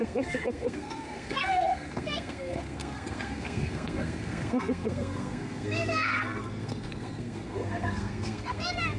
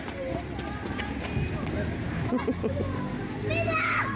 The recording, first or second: second